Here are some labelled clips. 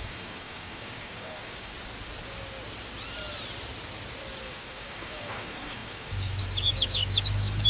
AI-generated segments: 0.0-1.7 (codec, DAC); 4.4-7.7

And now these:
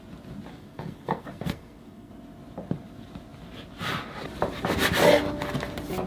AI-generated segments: 0.5-2.1 (codec, SNAC)

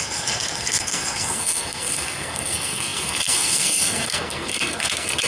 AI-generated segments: 0.0-5.3 (codec, SNAC)

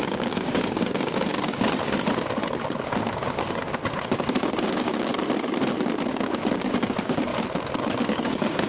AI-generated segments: 0.0-1.3 (codec, DAC); 2.8-3.8; 4.4-5.1; 6.2-7.3; 8.0-8.7

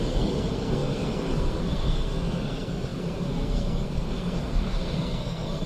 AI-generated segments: 0.0-5.7 (codec, SNAC)

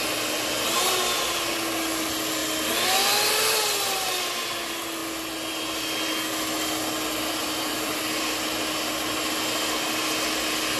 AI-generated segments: 7.4-8.0 (vocoder, BigVGAN v2)

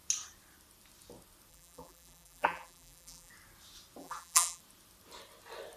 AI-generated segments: 1.5-3.3 (vocoder, BigVGAN v2); 4.0-4.6

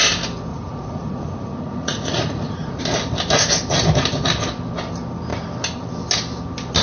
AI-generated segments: 0.5-2.8 (vocoder, Vocos)